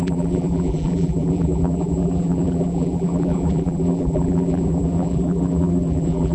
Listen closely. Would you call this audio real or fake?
fake